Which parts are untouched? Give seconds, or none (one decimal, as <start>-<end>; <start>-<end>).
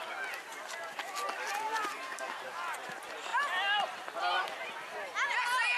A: 0.0-1.9; 2.4-5.8